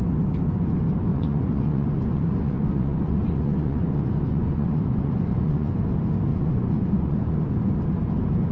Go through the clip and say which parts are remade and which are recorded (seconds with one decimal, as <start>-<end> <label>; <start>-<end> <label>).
0.0-1.1 recorded; 1.1-5.8 remade; 5.8-6.3 recorded; 6.3-7.8 remade; 7.8-8.5 recorded